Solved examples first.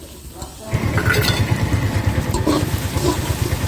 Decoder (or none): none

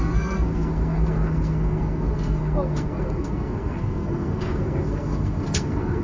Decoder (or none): codec, SNAC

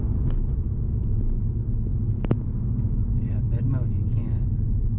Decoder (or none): none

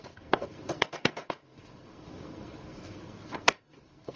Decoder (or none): codec, SNAC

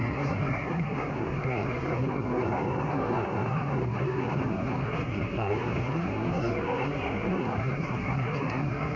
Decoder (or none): codec, SNAC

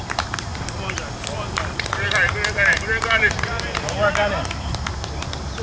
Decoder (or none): none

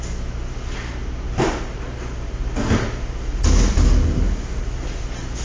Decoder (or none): none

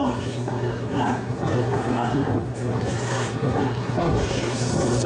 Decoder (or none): codec, SNAC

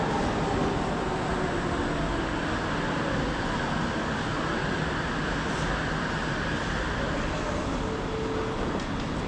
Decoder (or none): none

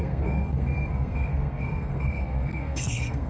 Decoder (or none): codec, SNAC